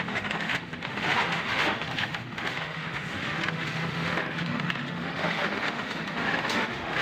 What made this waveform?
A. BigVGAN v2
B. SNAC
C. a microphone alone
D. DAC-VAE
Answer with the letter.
D